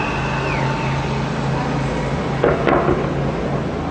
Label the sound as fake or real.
real